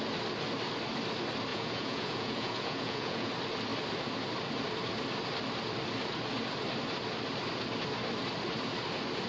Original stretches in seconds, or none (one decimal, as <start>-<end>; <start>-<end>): 0.0-1.5; 3.3-9.3